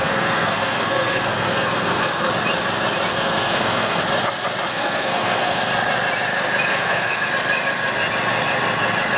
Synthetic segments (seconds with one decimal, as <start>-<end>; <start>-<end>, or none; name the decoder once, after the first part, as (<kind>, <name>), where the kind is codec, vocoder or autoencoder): 0.0-2.3 (codec, SNAC); 3.1-4.0; 4.7-5.6; 6.7-7.3